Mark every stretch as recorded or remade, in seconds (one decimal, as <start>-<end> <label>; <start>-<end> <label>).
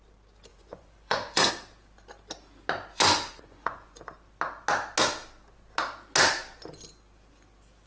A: 0.0-0.5 recorded; 0.5-1.5 remade; 1.5-2.9 recorded; 2.9-4.0 remade; 4.0-7.9 recorded